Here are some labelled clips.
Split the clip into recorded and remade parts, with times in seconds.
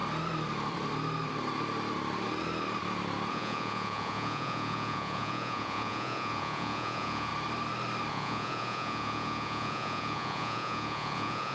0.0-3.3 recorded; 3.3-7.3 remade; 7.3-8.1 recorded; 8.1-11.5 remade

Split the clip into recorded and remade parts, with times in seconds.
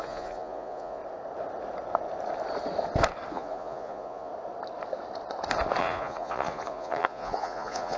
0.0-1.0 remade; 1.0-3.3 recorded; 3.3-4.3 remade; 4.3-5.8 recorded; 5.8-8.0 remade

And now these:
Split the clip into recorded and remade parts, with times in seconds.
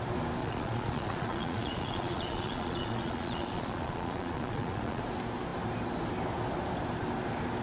0.0-0.4 recorded; 0.4-5.0 remade; 5.0-7.6 recorded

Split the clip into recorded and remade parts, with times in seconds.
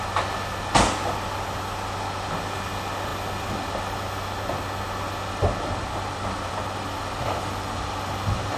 0.0-8.6 recorded